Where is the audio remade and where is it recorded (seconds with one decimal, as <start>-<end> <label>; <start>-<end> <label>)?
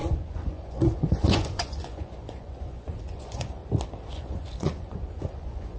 0.0-3.6 remade; 3.6-4.1 recorded; 4.1-5.8 remade